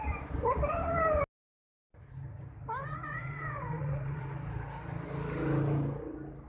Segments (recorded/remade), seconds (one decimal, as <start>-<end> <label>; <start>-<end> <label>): 0.0-2.8 recorded; 2.8-4.2 remade; 4.2-6.5 recorded